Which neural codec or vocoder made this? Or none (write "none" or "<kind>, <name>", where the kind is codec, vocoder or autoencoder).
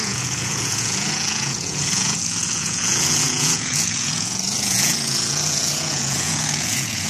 vocoder, Vocos